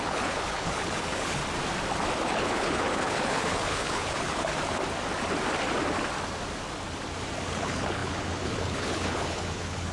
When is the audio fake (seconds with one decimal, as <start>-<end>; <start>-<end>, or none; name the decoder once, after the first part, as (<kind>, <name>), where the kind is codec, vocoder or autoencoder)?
0.0-1.4 (codec, HILCodec); 2.2-4.5; 7.6-9.9